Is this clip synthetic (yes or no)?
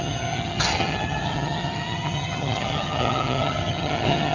yes